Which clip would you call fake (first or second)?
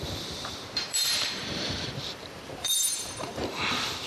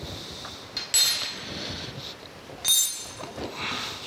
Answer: first